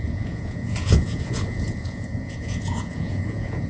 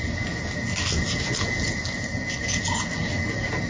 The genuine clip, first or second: second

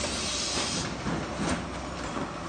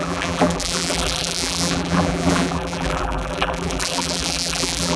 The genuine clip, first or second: first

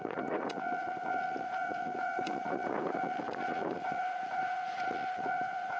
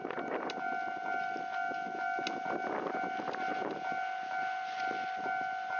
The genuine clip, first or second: second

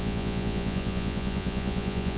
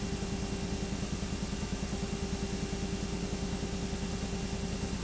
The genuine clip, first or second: second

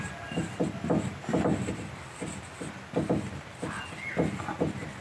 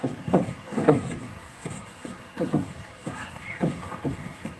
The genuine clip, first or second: first